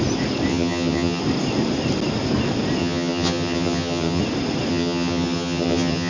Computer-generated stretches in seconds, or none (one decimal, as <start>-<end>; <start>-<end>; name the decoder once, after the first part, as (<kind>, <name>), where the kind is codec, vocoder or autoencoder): 0.5-1.2 (vocoder, HiFi-GAN); 2.8-4.2; 4.7-6.1